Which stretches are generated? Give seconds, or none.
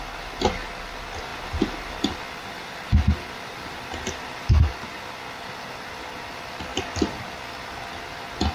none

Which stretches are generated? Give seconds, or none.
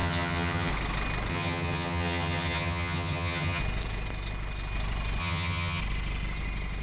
0.0-0.7 (vocoder, HiFi-GAN); 1.3-3.6; 5.2-5.8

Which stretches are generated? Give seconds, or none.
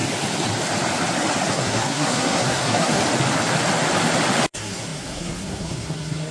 1.5-3.0 (codec, SNAC); 4.5-6.3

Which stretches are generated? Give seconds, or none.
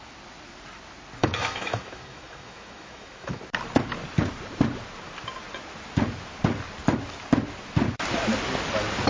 1.2-3.4 (autoencoder, DAC-VAE)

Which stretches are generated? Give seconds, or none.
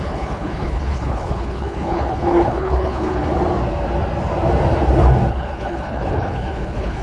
0.0-3.3 (codec, HILCodec); 5.3-7.0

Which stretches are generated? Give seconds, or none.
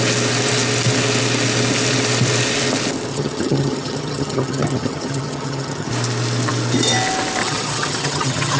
3.1-5.9 (vocoder, HiFi-GAN); 7.4-8.6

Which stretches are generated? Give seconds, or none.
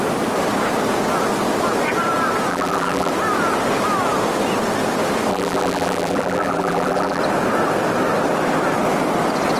2.5-3.1 (vocoder, BigVGAN v2); 5.3-7.2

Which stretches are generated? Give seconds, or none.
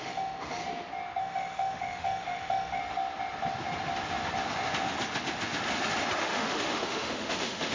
0.0-0.6 (autoencoder, DAC-VAE); 1.2-2.8; 6.2-7.7